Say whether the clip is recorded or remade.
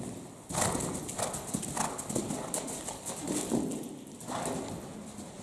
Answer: recorded